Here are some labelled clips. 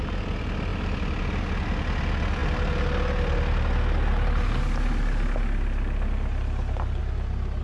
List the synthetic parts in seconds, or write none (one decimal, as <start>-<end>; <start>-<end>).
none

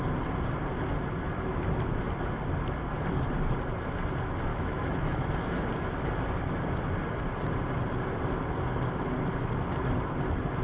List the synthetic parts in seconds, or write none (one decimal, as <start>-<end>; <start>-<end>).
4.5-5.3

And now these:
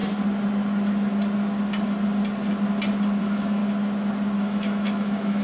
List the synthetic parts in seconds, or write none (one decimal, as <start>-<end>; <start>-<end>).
3.2-3.6; 4.4-5.4

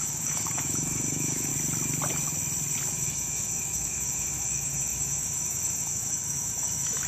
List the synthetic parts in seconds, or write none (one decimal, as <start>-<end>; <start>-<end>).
0.0-1.5; 2.9-7.1

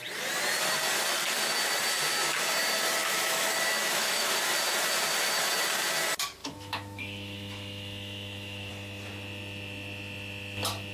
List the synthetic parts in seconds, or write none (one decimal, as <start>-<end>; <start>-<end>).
3.0-4.3; 6.4-8.7

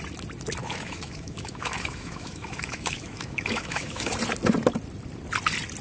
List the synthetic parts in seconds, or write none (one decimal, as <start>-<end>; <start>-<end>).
0.6-4.1

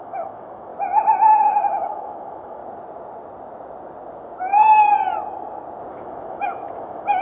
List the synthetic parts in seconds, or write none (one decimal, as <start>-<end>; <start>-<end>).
0.0-0.7; 1.4-2.6; 5.9-7.2